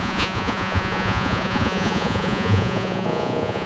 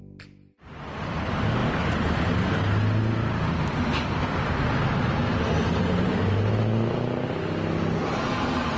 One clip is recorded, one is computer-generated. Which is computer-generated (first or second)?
first